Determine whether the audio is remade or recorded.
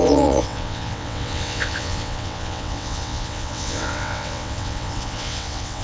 remade